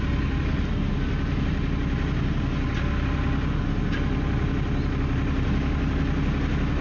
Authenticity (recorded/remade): recorded